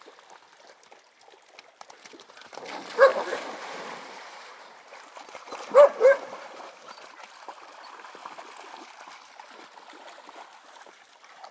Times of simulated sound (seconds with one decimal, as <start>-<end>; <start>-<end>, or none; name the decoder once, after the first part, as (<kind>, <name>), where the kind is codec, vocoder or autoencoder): 3.1-6.7 (vocoder, BigVGAN v2)